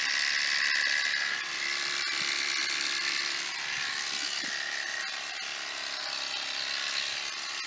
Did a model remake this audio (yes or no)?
no